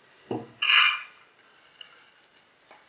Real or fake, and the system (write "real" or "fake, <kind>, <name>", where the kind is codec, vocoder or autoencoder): real